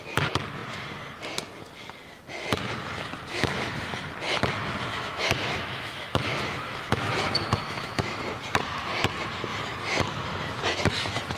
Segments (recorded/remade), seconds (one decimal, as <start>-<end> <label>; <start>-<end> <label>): 0.0-3.3 recorded; 3.3-3.9 remade; 3.9-4.9 recorded; 4.9-8.2 remade; 8.2-11.4 recorded